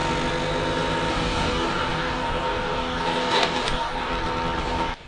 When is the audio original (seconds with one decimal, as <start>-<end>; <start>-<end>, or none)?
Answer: 0.0-1.1; 4.1-4.6